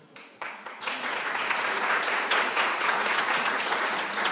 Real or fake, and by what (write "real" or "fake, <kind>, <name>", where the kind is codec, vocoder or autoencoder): fake, vocoder, Vocos